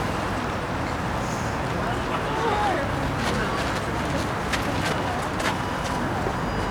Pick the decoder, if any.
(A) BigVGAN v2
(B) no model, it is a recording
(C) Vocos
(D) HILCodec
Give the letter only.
B